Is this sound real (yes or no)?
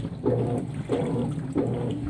yes